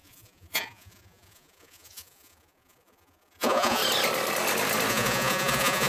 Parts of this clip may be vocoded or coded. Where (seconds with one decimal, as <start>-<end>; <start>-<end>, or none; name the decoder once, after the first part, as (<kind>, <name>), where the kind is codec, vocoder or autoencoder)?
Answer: 0.0-3.8 (vocoder, Vocos); 4.9-5.9